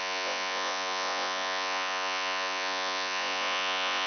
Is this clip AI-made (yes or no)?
yes